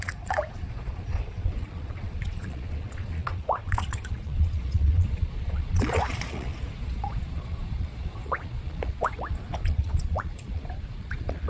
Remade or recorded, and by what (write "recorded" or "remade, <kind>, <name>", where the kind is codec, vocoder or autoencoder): remade, vocoder, Vocos